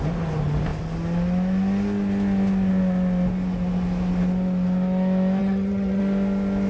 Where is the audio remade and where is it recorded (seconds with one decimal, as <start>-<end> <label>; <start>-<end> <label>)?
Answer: 0.0-5.4 recorded; 5.4-6.0 remade; 6.0-6.7 recorded